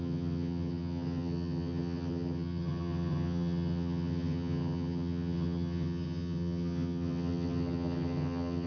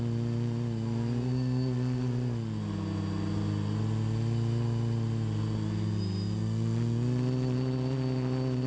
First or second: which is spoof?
first